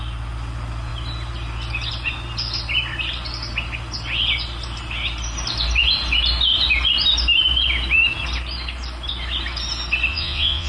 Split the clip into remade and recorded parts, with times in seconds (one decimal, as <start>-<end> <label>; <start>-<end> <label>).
0.0-10.1 recorded; 10.1-10.7 remade